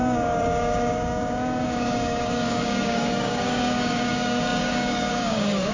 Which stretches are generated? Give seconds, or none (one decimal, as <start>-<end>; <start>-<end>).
0.0-5.7